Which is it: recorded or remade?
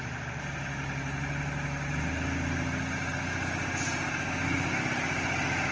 recorded